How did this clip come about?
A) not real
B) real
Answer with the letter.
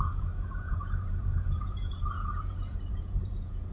A